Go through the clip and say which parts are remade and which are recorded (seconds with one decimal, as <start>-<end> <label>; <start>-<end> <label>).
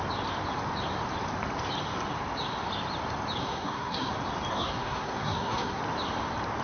0.0-3.4 recorded; 3.4-4.1 remade; 4.1-4.5 recorded; 4.5-5.8 remade; 5.8-6.6 recorded